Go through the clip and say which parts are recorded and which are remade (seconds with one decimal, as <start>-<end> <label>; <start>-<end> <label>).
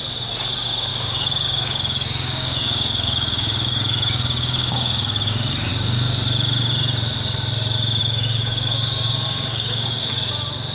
0.0-0.9 recorded; 0.9-5.7 remade; 5.7-8.0 recorded; 8.0-10.1 remade; 10.1-10.7 recorded